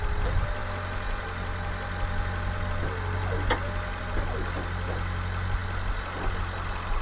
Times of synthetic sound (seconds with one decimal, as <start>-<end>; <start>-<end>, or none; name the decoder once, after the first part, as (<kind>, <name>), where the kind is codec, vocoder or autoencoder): none